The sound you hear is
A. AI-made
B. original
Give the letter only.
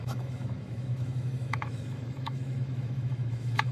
A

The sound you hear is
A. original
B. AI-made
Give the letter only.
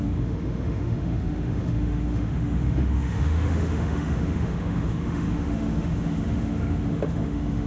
B